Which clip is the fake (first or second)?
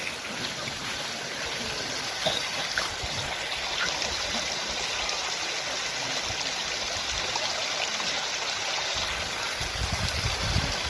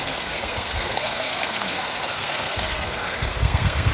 second